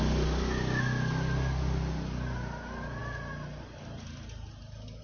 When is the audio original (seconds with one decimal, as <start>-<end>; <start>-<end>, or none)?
0.0-5.0